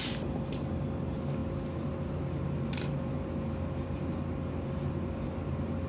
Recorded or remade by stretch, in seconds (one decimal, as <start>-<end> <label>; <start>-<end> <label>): 0.0-5.9 recorded